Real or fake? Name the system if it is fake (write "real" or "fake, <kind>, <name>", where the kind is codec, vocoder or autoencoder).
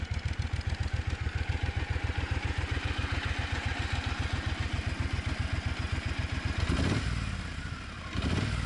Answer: real